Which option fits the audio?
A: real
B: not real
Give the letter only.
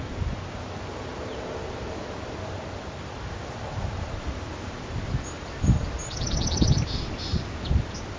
A